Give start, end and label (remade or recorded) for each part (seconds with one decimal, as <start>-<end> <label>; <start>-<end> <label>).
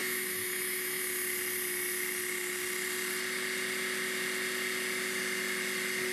0.0-1.0 remade; 1.0-6.1 recorded